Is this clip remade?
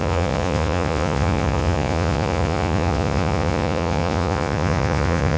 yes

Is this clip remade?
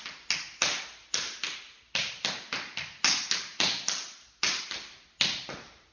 no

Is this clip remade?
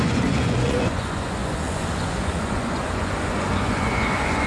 yes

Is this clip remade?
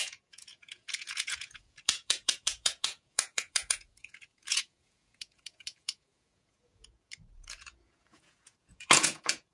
yes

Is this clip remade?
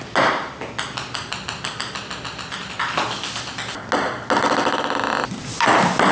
no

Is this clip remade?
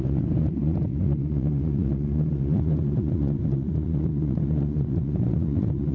yes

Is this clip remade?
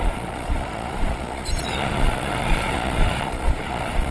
yes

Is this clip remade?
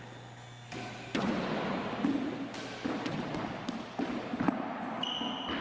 no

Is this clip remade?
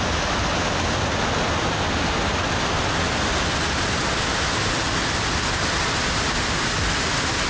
no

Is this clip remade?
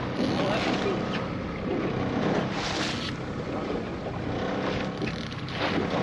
no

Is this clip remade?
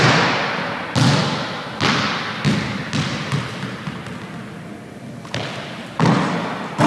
no